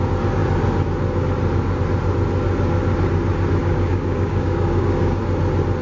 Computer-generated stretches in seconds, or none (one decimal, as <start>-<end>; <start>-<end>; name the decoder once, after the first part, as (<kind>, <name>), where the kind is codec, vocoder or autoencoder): 3.6-5.2 (codec, DAC)